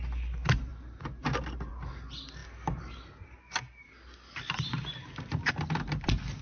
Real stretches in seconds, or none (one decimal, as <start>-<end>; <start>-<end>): 0.0-6.4

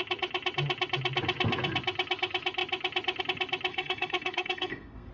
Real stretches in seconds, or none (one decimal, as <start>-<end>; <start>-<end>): 0.0-3.7

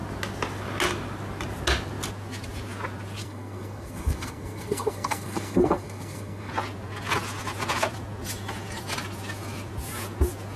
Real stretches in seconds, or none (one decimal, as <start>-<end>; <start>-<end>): 0.0-3.2; 6.5-10.6

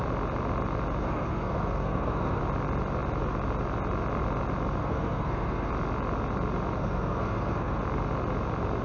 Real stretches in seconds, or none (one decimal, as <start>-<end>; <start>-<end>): 0.0-1.0; 2.4-4.8; 5.7-6.8; 7.8-8.8